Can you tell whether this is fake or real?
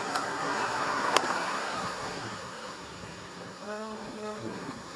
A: fake